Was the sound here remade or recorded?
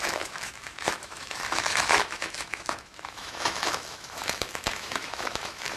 remade